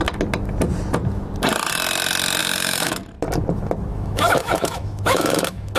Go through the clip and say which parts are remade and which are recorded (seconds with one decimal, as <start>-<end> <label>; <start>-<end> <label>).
0.0-2.4 recorded; 2.4-3.0 remade; 3.0-3.9 recorded; 3.9-5.8 remade